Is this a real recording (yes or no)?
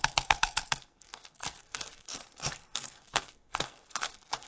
no